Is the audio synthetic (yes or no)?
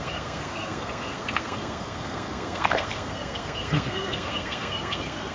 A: yes